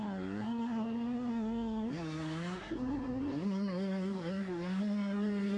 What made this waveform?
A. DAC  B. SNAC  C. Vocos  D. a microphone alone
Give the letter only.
B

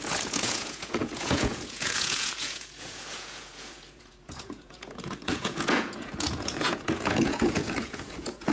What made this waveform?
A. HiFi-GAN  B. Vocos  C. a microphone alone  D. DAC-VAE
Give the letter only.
B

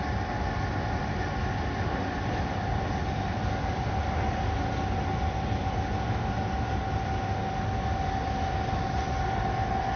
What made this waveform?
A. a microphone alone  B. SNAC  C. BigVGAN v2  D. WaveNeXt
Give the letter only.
A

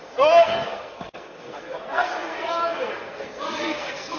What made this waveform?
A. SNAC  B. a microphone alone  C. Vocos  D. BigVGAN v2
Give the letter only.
A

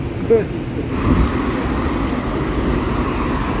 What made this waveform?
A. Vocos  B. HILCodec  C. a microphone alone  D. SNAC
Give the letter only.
C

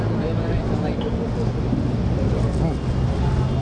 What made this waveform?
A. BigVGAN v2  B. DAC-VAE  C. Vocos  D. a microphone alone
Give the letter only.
D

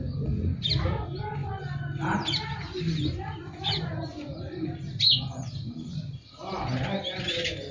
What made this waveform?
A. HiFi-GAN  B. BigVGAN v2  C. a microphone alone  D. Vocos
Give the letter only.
C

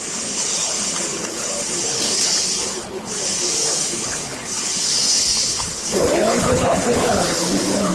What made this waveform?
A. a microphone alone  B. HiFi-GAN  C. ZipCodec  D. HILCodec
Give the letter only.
D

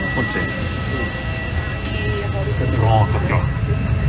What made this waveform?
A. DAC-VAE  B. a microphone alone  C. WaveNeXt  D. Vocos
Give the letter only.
B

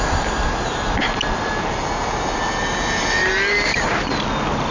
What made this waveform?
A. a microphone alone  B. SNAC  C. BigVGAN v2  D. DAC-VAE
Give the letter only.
A